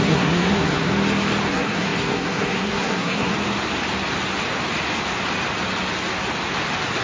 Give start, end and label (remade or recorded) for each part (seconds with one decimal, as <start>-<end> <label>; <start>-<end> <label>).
0.0-0.9 remade; 0.9-1.5 recorded; 1.5-3.3 remade; 3.3-7.0 recorded